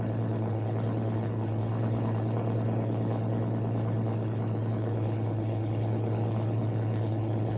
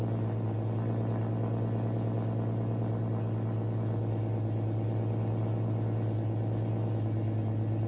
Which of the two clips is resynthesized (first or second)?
first